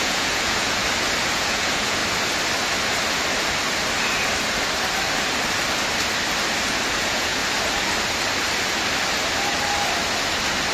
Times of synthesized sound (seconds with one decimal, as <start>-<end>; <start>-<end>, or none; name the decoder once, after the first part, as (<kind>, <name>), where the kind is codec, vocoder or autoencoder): 0.0-0.8 (vocoder, Vocos); 1.3-2.0; 6.9-7.4